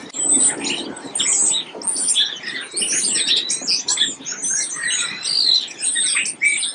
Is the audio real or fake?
real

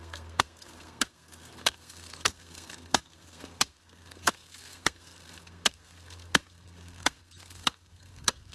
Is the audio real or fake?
fake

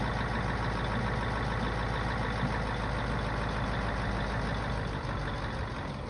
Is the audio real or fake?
real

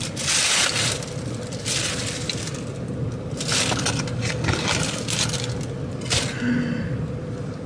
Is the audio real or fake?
real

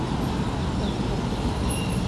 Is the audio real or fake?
real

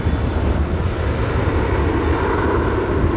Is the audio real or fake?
real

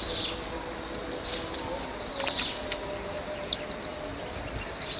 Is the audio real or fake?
real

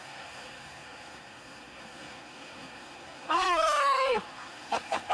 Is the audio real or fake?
fake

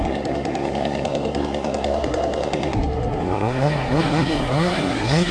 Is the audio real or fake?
fake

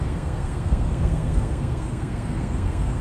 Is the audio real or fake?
fake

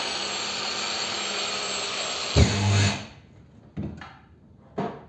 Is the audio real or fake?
real